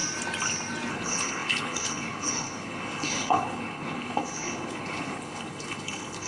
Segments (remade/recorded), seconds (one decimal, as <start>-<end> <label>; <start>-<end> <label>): 0.0-0.9 recorded; 0.9-6.3 remade